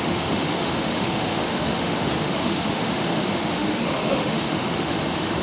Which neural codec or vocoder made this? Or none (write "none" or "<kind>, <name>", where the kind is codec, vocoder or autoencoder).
autoencoder, DAC-VAE